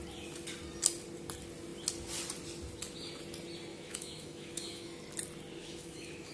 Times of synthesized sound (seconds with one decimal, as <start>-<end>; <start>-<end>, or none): 3.7-5.0; 5.6-6.3